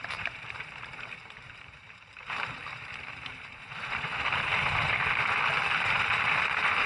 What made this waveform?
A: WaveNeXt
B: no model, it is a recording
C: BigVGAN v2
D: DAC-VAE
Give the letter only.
C